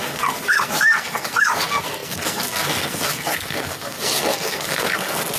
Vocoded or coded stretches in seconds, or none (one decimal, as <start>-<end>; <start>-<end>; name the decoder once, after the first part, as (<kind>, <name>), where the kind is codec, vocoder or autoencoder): 0.0-5.4 (codec, SNAC)